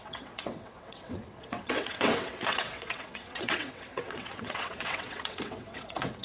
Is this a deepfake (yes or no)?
yes